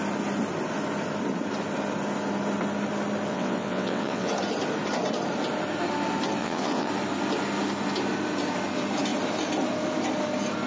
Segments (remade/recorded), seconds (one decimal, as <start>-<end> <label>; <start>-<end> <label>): 0.0-3.3 recorded; 3.3-4.3 remade; 4.3-6.4 recorded; 6.4-6.9 remade; 6.9-10.7 recorded